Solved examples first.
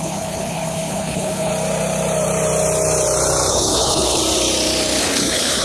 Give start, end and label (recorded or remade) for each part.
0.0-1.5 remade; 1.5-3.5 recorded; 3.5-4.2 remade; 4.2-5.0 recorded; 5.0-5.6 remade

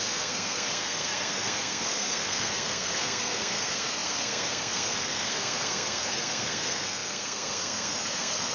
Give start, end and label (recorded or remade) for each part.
0.0-8.5 remade

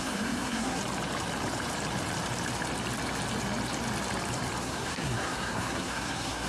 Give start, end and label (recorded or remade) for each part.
0.0-0.8 remade; 0.8-4.6 recorded; 4.6-6.5 remade

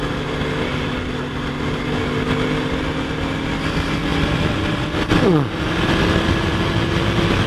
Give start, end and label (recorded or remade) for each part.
0.0-7.5 recorded

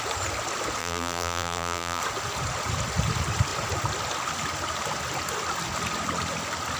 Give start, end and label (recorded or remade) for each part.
0.0-0.8 recorded; 0.8-2.0 remade; 2.0-6.8 recorded